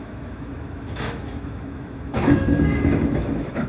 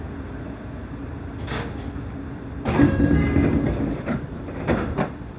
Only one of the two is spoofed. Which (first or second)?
first